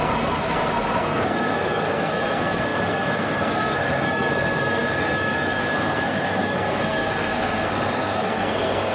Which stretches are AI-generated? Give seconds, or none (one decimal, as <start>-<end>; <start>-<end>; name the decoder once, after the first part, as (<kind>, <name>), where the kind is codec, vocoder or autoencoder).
0.0-8.9 (codec, SNAC)